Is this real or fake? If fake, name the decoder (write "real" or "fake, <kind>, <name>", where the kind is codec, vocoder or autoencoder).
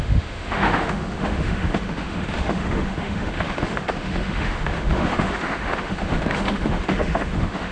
fake, autoencoder, DAC-VAE